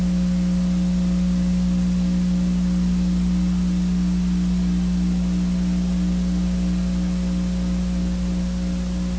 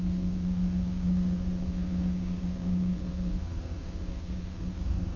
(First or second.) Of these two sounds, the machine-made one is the second